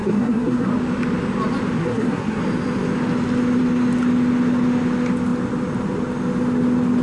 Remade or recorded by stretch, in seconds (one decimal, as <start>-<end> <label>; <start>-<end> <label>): 0.0-0.7 remade; 0.7-1.8 recorded; 1.8-2.4 remade; 2.4-7.0 recorded

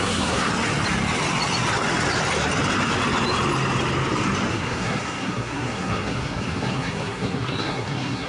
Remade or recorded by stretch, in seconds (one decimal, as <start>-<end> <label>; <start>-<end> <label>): 0.0-0.5 remade; 0.5-4.5 recorded; 4.5-8.3 remade

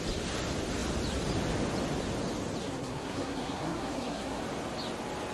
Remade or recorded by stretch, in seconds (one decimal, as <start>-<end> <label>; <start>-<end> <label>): 0.0-2.6 recorded; 2.6-4.4 remade; 4.4-5.3 recorded

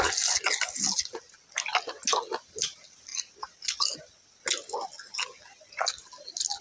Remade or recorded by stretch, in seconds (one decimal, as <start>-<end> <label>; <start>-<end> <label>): 0.0-6.6 recorded

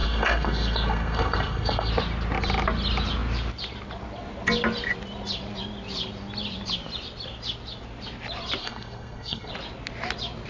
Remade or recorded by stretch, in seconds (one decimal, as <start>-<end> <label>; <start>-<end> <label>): 0.0-1.9 remade; 1.9-8.6 recorded; 8.6-9.5 remade; 9.5-10.5 recorded

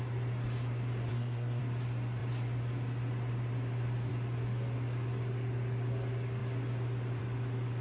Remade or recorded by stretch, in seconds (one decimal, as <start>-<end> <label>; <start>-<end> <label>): 0.0-1.1 recorded; 1.1-1.6 remade; 1.6-7.8 recorded